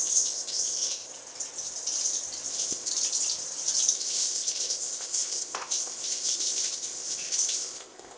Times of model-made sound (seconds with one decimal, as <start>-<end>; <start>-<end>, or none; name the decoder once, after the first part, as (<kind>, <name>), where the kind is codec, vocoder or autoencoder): 0.0-1.1 (codec, ZipCodec); 2.5-2.9; 3.9-8.2